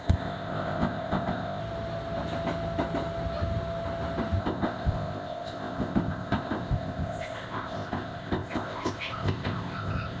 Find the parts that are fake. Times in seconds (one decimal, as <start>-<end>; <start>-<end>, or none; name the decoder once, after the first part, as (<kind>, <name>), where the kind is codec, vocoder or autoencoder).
0.0-1.6 (codec, ZipCodec); 4.4-10.2